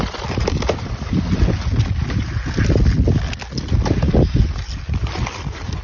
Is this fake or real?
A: real